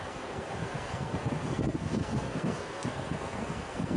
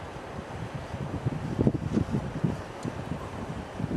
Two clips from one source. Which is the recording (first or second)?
second